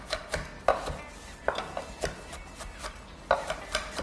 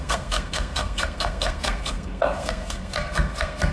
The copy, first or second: second